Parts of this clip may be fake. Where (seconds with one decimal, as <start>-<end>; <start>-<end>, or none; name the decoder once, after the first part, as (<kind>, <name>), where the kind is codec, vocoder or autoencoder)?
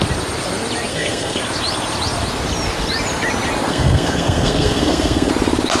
0.9-1.4 (codec, SNAC); 3.7-5.3